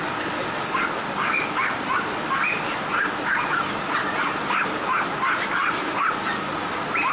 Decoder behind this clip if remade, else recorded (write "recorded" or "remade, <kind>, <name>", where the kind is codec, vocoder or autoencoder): recorded